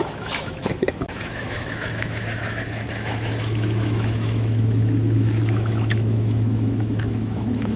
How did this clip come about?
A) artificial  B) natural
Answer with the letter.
A